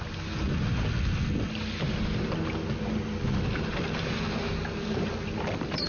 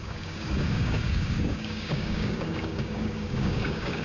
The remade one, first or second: second